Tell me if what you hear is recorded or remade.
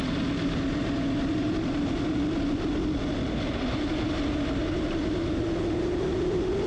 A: recorded